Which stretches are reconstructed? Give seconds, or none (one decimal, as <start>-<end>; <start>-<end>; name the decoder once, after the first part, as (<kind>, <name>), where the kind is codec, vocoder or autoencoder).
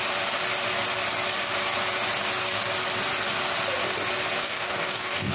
4.4-5.3 (codec, DAC)